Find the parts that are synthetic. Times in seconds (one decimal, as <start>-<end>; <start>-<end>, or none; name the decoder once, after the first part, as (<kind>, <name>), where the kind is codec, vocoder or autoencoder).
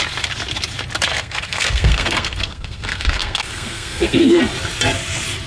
1.1-4.4 (codec, SNAC)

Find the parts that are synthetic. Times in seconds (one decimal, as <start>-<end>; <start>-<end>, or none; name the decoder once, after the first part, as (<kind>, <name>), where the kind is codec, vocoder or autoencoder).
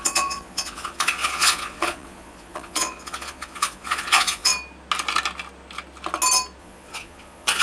0.0-4.5 (vocoder, Vocos); 6.6-7.6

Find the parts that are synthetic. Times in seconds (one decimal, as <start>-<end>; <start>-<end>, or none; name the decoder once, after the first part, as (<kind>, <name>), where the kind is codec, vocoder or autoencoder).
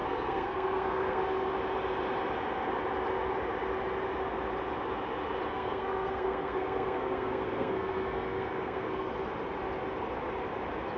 0.0-1.5 (codec, SNAC); 5.5-9.1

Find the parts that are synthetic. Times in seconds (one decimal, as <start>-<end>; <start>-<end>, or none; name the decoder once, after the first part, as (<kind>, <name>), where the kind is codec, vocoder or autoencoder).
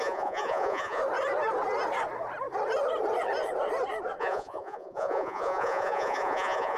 0.0-1.0 (vocoder, Vocos); 4.2-6.8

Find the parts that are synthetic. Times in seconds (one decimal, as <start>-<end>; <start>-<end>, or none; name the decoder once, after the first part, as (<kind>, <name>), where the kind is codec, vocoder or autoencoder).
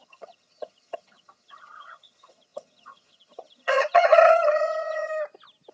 0.0-5.1 (vocoder, HiFi-GAN)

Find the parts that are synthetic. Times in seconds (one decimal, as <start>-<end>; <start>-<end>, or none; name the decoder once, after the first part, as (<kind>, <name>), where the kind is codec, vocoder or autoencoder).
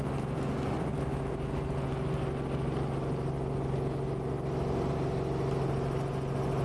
none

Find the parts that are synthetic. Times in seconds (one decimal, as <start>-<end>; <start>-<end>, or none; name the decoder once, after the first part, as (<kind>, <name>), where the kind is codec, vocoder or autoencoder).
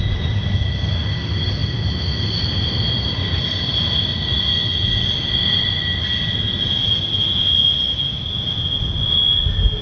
1.6-3.7 (vocoder, BigVGAN v2)